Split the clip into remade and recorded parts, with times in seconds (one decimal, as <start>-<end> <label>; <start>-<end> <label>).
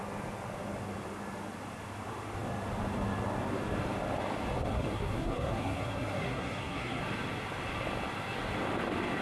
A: 0.0-4.7 recorded; 4.7-7.0 remade; 7.0-9.2 recorded